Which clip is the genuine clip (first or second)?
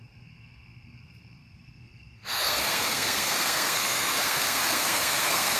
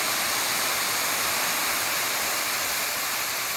second